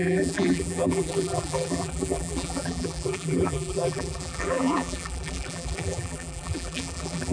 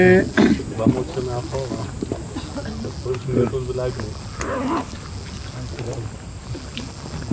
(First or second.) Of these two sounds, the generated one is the first